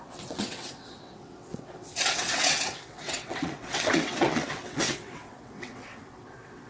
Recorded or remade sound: remade